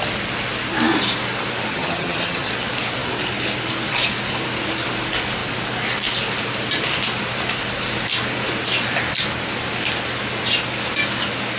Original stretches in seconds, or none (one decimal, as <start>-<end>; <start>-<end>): 0.0-1.7; 2.5-11.6